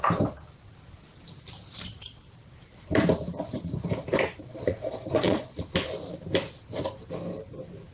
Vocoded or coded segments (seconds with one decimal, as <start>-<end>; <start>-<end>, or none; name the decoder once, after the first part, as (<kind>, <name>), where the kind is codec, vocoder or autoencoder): 4.5-5.6 (vocoder, Vocos)

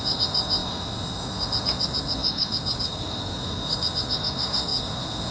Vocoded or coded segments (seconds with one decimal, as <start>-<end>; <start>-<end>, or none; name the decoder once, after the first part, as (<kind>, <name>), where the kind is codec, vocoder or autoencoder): 0.6-1.2 (vocoder, BigVGAN v2)